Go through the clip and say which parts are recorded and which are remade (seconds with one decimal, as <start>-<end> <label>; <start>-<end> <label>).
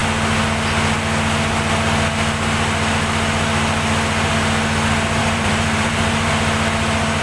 0.0-5.2 recorded; 5.2-6.3 remade; 6.3-7.2 recorded